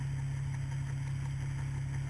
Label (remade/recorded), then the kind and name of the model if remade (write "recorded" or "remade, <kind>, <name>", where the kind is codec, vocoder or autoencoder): recorded